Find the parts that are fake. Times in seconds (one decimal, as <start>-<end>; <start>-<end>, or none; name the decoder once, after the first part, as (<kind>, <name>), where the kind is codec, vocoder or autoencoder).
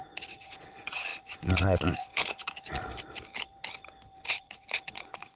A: 0.0-2.9 (vocoder, Vocos); 4.3-5.4